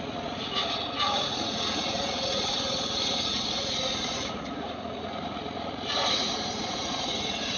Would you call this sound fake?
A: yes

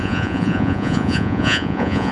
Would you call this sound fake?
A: yes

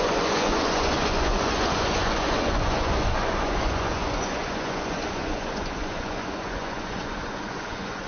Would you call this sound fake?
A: yes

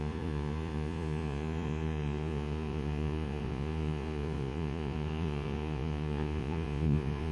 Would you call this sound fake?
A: yes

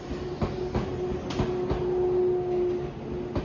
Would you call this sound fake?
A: no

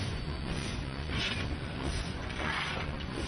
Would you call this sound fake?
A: yes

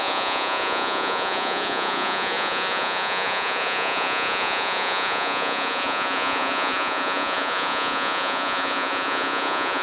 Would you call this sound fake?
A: yes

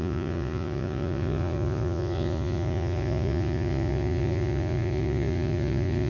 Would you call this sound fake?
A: yes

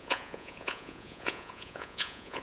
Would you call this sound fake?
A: yes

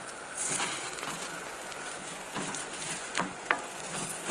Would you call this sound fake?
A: yes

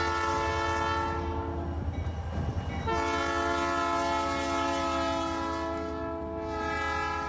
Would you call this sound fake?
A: no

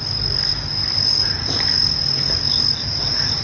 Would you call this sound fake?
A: no